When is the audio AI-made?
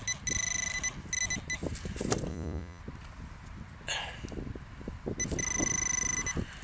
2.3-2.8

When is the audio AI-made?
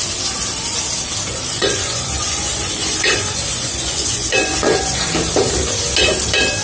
1.3-5.1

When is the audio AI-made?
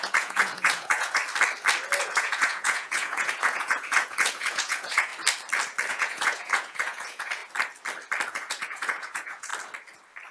0.0-1.2; 2.0-5.1; 5.9-7.4; 8.3-9.5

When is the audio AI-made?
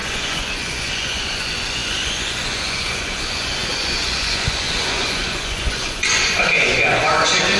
0.0-7.6